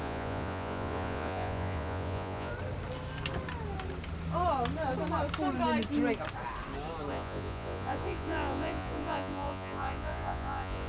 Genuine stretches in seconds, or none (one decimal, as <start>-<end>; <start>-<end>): 2.5-7.1